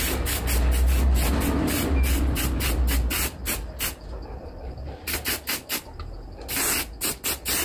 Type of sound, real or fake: real